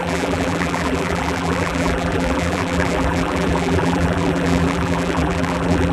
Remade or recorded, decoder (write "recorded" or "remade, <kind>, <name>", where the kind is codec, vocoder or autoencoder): remade, vocoder, BigVGAN v2